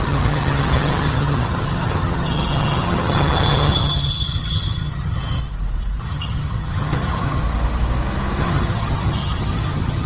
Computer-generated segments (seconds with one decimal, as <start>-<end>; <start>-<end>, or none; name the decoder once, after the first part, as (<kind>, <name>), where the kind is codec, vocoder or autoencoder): 0.0-5.4 (vocoder, HiFi-GAN); 6.0-7.4; 8.4-10.1